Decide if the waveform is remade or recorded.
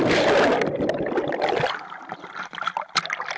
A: recorded